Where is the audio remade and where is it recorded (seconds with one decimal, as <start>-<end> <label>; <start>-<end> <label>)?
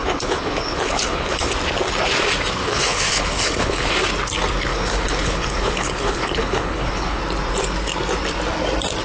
0.0-1.5 remade; 1.5-2.6 recorded; 2.6-3.9 remade; 3.9-4.7 recorded; 4.7-7.2 remade; 7.2-9.0 recorded